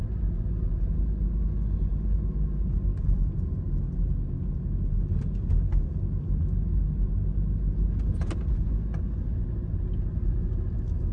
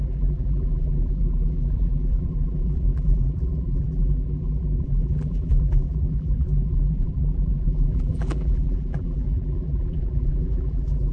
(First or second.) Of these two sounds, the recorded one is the first